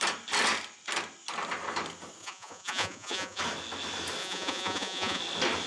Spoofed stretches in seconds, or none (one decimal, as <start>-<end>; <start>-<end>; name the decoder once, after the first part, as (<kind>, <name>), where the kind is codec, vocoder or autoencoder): 2.2-3.4 (vocoder, Vocos); 4.2-5.2